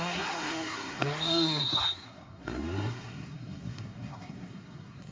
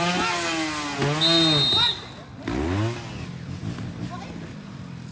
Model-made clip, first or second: first